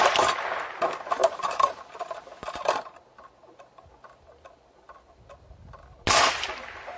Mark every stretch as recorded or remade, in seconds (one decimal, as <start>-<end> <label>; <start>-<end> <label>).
0.0-1.2 recorded; 1.2-1.8 remade; 1.8-7.0 recorded